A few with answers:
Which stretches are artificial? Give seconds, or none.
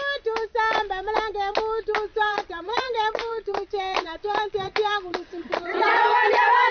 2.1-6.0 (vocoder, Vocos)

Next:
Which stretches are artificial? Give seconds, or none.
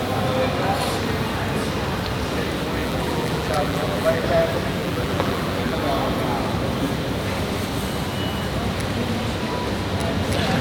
2.8-4.2 (vocoder, BigVGAN v2); 4.8-5.8